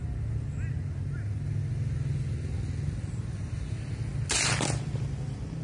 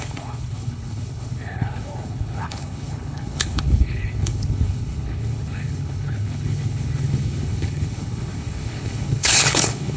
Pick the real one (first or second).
first